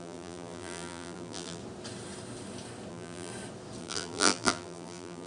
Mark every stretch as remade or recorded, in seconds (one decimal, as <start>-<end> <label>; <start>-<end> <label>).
0.0-1.6 remade; 1.6-2.9 recorded; 2.9-3.3 remade; 3.3-3.8 recorded; 3.8-5.3 remade